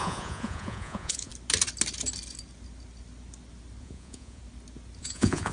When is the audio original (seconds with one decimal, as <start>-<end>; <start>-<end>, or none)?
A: 1.3-3.8; 4.4-5.0

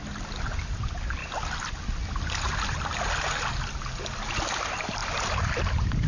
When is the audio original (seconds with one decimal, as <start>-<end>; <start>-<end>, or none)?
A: 0.0-6.1